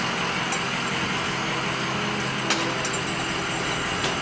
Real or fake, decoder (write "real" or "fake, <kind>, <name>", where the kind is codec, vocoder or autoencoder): real